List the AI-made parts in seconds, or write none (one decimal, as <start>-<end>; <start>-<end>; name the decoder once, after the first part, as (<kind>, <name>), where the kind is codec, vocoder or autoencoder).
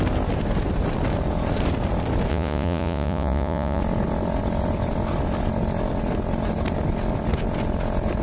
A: 2.3-3.8 (vocoder, Vocos)